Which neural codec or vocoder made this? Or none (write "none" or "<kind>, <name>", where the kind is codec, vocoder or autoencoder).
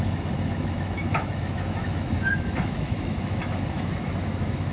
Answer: autoencoder, DAC-VAE